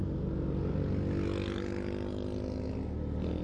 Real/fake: real